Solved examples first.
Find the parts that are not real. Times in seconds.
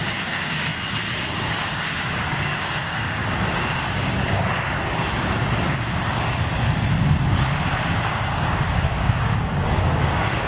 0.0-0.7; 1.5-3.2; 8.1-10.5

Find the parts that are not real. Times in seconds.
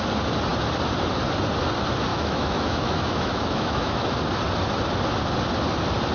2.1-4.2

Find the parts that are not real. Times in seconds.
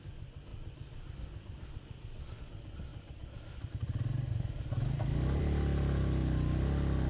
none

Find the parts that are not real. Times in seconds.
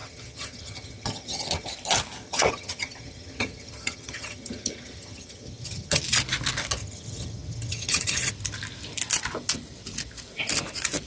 0.0-1.7; 2.2-6.0; 6.8-8.3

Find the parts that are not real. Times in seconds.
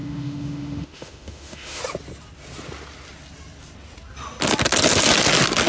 0.0-1.8